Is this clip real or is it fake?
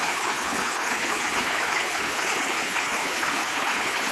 fake